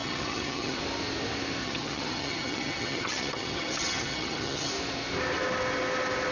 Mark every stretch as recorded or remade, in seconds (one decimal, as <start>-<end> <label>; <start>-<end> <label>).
0.0-0.8 remade; 0.8-1.6 recorded; 1.6-4.7 remade; 4.7-6.3 recorded